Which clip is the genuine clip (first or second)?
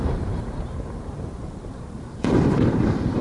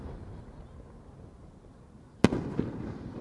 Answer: second